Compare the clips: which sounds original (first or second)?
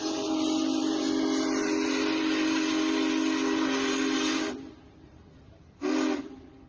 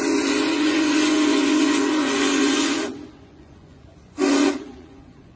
first